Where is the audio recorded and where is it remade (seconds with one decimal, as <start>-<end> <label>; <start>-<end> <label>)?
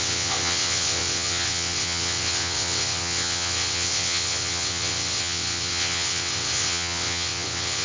0.0-7.8 remade